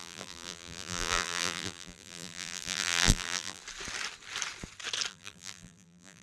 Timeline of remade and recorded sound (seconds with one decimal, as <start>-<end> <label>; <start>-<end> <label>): 0.0-3.6 remade; 3.6-5.1 recorded; 5.1-6.2 remade